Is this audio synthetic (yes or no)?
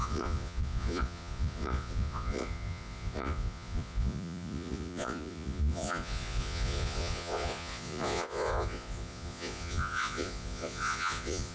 yes